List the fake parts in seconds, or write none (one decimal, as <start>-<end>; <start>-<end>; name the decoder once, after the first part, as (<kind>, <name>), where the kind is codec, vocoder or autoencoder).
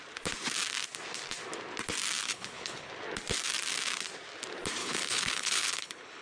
2.2-2.9 (codec, HILCodec); 4.8-6.2